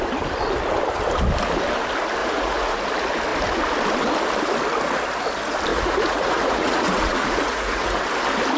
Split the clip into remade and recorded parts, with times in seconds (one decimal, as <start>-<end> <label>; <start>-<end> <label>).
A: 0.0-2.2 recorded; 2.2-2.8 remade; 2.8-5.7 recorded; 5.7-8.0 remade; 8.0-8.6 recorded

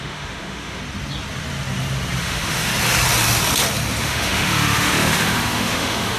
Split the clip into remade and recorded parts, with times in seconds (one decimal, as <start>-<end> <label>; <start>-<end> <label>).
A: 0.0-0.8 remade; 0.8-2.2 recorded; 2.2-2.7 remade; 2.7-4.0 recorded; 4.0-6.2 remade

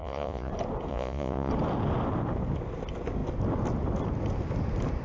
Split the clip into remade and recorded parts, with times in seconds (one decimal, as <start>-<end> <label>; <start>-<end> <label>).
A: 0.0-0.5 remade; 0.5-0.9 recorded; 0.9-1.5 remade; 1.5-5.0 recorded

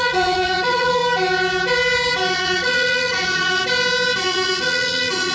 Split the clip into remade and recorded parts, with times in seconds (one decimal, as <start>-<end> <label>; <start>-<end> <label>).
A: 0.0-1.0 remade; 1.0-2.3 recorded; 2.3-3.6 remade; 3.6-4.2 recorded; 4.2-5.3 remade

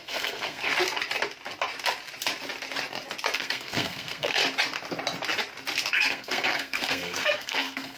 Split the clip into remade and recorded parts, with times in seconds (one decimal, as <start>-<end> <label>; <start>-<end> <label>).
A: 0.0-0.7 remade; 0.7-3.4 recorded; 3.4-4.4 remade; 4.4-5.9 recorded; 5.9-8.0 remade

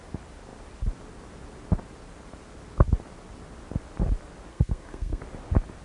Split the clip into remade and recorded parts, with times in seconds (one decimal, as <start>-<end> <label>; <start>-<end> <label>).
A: 0.0-4.5 recorded; 4.5-5.2 remade; 5.2-5.8 recorded

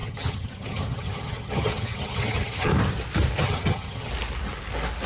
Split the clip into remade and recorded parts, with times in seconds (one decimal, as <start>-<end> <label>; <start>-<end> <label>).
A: 0.0-2.7 remade; 2.7-3.4 recorded; 3.4-4.1 remade; 4.1-5.1 recorded

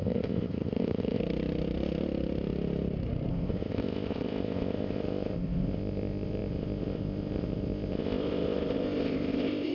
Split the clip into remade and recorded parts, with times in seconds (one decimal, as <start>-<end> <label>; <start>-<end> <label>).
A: 0.0-1.2 remade; 1.2-3.3 recorded; 3.3-9.7 remade